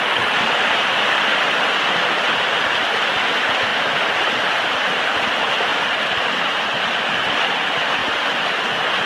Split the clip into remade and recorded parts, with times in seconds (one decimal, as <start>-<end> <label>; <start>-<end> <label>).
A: 0.0-9.1 recorded